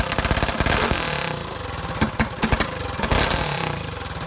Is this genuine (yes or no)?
yes